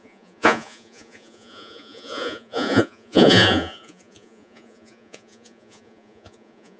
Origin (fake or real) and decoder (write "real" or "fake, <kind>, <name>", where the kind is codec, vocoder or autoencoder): fake, vocoder, Vocos